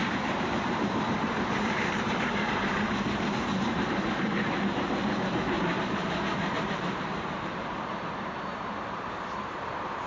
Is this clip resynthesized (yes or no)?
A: yes